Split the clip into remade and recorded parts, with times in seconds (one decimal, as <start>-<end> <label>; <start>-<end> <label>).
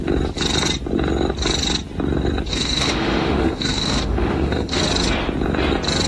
0.0-2.5 recorded; 2.5-4.8 remade; 4.8-6.1 recorded